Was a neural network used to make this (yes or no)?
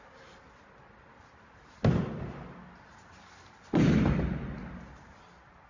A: no